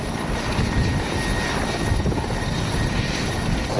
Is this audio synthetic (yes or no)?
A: no